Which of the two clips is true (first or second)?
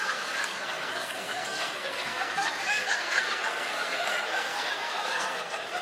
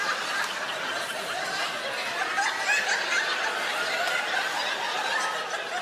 second